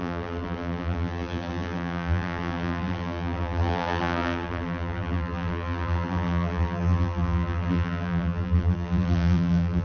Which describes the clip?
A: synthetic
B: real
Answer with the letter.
A